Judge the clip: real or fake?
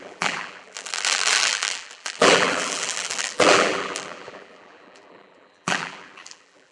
fake